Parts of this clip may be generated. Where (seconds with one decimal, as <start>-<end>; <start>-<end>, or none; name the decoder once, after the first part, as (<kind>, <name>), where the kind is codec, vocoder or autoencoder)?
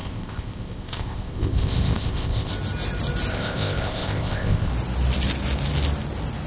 0.0-2.5 (codec, ZipCodec); 3.3-4.7